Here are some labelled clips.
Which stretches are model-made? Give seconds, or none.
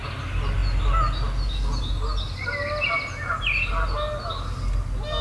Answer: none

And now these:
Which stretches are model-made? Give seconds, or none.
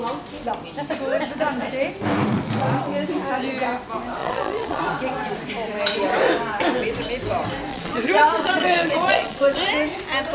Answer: 4.2-4.8 (vocoder, Vocos); 7.7-9.7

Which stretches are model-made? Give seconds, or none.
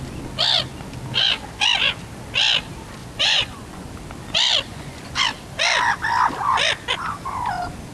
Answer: 3.0-3.9 (vocoder, Vocos); 4.7-5.2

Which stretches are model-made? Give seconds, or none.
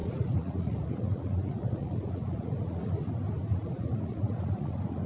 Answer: 0.0-3.1 (vocoder, Vocos); 3.5-5.1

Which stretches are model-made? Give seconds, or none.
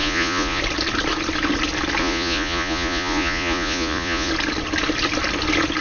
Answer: 0.0-0.6 (vocoder, Vocos); 2.0-4.3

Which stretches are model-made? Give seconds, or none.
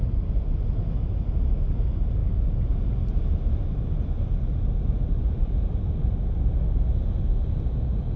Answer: none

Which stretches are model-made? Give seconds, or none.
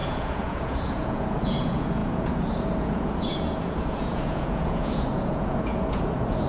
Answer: 0.0-6.5 (vocoder, Vocos)